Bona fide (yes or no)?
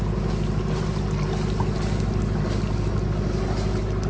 yes